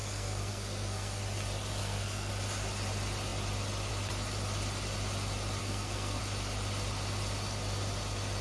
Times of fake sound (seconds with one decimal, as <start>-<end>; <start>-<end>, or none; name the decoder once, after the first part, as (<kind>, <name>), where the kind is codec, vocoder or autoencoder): 0.0-1.2 (codec, SNAC); 1.8-2.3; 5.6-6.2